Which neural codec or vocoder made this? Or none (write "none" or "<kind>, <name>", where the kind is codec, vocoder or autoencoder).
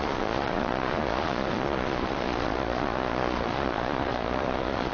vocoder, Vocos